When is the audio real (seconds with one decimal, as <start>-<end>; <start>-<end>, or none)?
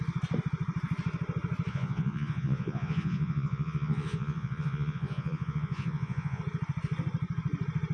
0.0-1.7; 6.4-7.9